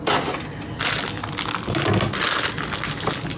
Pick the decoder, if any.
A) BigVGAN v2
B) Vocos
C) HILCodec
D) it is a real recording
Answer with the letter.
D